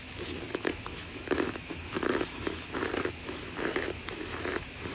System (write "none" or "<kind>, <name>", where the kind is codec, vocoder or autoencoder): autoencoder, DAC-VAE